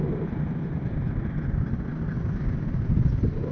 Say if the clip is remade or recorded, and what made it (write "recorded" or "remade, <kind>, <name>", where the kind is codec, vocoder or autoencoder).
recorded